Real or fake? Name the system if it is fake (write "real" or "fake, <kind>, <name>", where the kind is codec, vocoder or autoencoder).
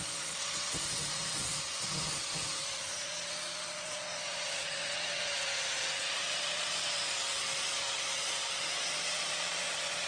fake, vocoder, Vocos